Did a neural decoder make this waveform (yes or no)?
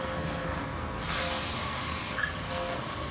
yes